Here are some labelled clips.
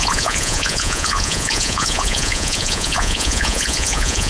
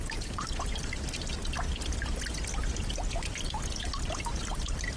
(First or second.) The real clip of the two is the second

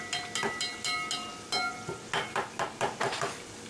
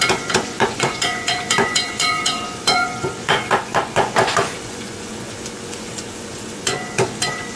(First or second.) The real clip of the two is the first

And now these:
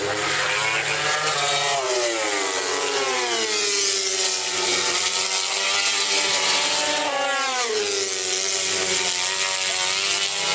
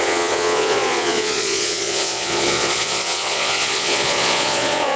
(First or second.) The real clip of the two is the first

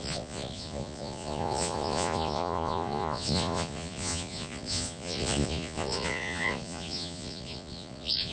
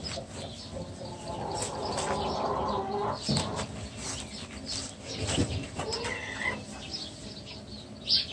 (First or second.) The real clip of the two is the second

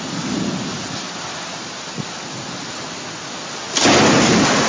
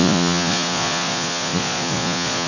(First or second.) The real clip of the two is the first